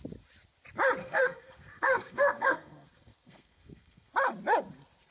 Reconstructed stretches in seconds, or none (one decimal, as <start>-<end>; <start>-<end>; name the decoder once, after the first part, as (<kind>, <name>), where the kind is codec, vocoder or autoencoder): 1.0-4.1 (codec, SNAC)